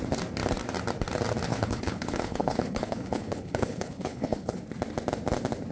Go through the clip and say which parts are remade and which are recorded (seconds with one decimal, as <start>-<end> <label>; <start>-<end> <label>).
0.0-1.5 recorded; 1.5-4.6 remade; 4.6-5.7 recorded